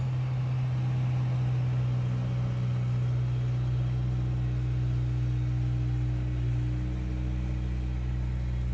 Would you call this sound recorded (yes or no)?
yes